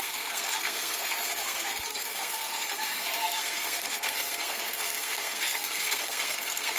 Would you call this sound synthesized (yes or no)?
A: yes